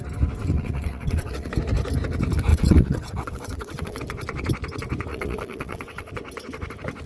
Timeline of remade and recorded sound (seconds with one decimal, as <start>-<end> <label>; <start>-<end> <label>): 0.0-0.4 recorded; 0.4-1.5 remade; 1.5-2.5 recorded; 2.5-4.0 remade; 4.0-5.1 recorded; 5.1-6.1 remade; 6.1-7.1 recorded